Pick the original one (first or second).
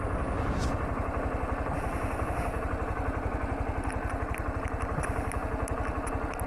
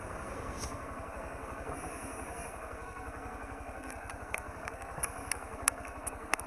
first